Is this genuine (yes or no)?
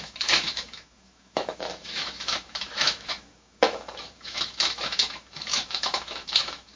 no